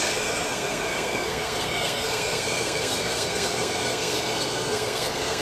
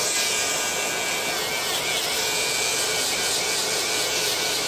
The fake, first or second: first